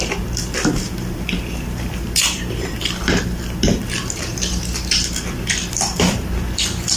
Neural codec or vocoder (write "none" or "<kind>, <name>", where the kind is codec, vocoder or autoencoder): vocoder, BigVGAN v2